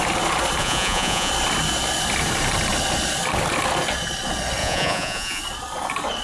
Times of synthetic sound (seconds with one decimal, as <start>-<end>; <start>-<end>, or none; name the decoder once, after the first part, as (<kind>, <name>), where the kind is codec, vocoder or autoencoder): 0.6-1.3 (vocoder, Vocos); 4.6-5.4